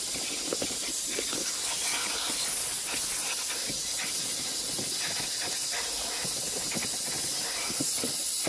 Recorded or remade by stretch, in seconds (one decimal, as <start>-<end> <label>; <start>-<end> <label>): 0.0-8.5 recorded